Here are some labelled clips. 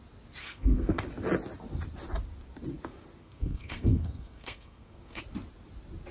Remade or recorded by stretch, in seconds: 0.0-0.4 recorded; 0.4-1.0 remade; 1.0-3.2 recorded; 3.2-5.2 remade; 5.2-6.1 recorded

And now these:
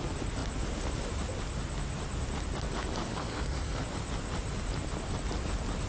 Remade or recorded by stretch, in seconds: 0.0-3.1 recorded; 3.1-3.8 remade; 3.8-5.9 recorded

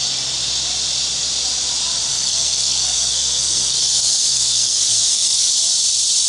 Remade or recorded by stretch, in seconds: 0.0-2.1 recorded; 2.1-5.5 remade; 5.5-6.3 recorded

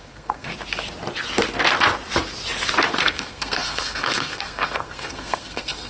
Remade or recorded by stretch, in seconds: 0.0-0.5 remade; 0.5-3.0 recorded; 3.0-5.9 remade

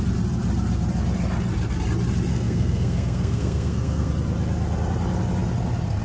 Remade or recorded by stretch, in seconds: 0.0-2.3 recorded; 2.3-4.1 remade; 4.1-6.0 recorded

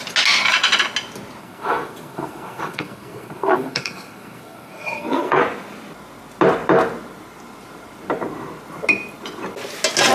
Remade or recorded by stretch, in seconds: 0.0-1.4 recorded; 1.4-5.4 remade; 5.4-10.1 recorded

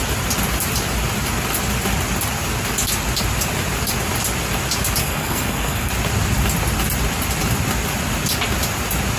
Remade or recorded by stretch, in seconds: 0.0-5.0 recorded; 5.0-5.9 remade; 5.9-9.2 recorded